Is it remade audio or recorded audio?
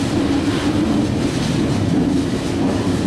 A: recorded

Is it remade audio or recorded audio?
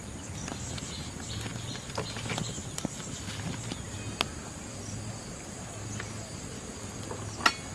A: recorded